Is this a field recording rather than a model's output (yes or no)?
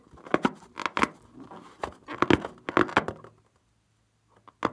yes